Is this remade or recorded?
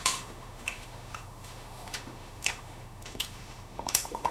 remade